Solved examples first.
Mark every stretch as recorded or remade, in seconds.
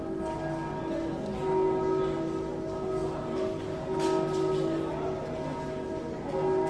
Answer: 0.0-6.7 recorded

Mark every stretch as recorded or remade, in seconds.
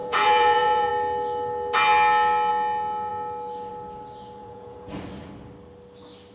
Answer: 0.0-0.9 remade; 0.9-4.4 recorded; 4.4-5.0 remade; 5.0-6.3 recorded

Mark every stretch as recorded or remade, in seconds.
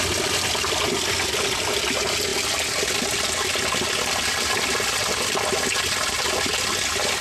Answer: 0.0-7.2 recorded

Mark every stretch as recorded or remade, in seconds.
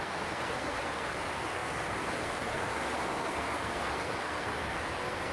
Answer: 0.0-5.3 remade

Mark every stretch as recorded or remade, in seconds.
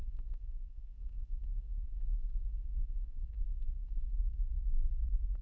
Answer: 0.0-5.4 remade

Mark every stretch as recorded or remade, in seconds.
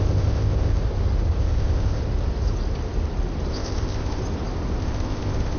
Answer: 0.0-0.8 remade; 0.8-1.4 recorded; 1.4-2.0 remade; 2.0-3.5 recorded; 3.5-4.2 remade; 4.2-4.8 recorded; 4.8-5.6 remade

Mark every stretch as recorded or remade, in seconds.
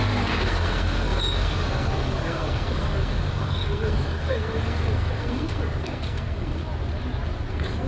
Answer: 0.0-6.6 remade; 6.6-7.5 recorded; 7.5-7.9 remade